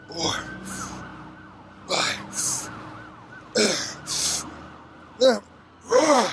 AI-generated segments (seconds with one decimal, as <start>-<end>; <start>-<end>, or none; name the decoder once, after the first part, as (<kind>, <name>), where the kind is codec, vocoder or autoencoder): 5.6-6.3 (codec, SNAC)